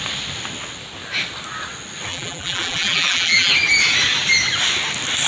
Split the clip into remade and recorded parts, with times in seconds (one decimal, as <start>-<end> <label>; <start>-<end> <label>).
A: 0.0-2.1 recorded; 2.1-3.5 remade; 3.5-5.3 recorded